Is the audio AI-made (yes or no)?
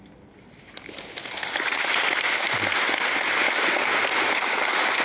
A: no